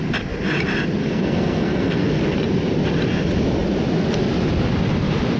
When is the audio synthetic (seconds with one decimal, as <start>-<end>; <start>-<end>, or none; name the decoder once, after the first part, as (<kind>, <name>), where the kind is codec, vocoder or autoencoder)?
1.0-2.2 (codec, SNAC)